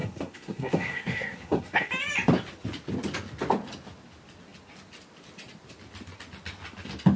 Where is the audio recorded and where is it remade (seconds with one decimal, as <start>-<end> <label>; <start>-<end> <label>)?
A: 0.0-1.9 remade; 1.9-7.2 recorded